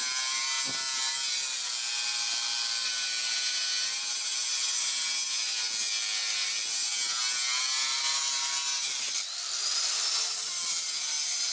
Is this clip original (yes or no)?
yes